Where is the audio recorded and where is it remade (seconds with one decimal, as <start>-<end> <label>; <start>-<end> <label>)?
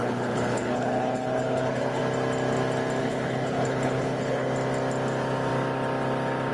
0.0-2.0 remade; 2.0-3.0 recorded; 3.0-4.5 remade; 4.5-6.5 recorded